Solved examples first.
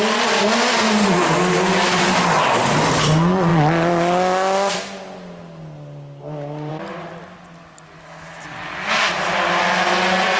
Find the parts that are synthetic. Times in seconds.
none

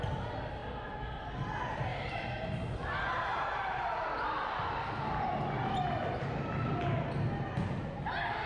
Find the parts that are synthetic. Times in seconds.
none